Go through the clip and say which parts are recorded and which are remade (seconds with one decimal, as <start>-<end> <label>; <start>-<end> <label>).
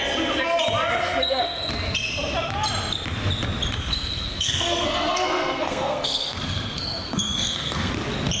0.0-1.2 recorded; 1.2-1.7 remade; 1.7-3.9 recorded; 3.9-7.9 remade; 7.9-8.4 recorded